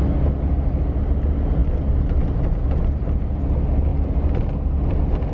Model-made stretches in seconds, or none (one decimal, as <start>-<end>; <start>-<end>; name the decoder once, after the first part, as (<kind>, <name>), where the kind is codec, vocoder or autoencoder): none